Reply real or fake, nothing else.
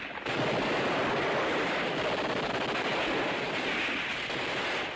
real